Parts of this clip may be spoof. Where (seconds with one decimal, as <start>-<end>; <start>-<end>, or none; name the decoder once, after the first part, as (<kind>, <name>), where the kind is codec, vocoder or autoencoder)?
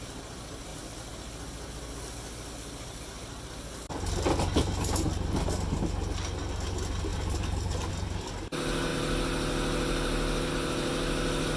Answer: 7.1-7.9 (vocoder, BigVGAN v2)